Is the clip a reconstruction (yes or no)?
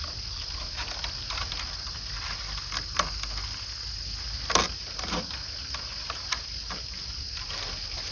no